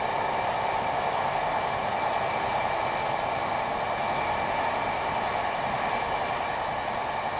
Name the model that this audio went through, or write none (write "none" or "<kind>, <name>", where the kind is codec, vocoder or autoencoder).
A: none